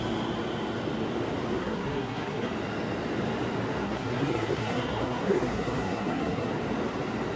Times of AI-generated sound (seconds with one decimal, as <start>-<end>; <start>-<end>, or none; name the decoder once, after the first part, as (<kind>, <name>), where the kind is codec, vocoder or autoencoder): 1.6-2.5 (codec, SNAC); 3.8-6.5

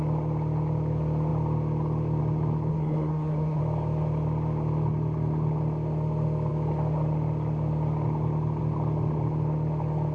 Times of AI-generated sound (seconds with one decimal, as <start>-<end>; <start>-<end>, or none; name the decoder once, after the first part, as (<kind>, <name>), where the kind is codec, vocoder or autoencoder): 2.7-3.6 (codec, SNAC)

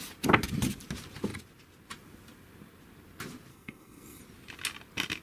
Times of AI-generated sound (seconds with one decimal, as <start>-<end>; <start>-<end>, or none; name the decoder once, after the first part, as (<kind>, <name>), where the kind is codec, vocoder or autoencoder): 3.5-4.2 (codec, SNAC)

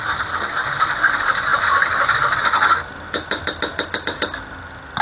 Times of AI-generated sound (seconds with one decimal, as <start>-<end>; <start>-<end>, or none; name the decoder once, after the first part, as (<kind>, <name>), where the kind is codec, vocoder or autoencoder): none